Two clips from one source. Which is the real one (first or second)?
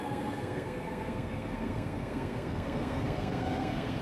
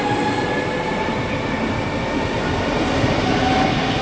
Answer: second